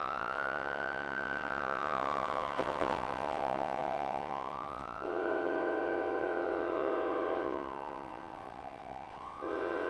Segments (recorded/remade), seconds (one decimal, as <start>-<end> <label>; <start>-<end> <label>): 0.0-9.9 remade